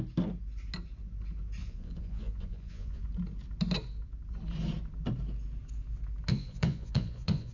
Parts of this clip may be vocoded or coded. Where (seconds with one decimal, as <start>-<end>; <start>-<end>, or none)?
1.6-3.1; 6.3-7.5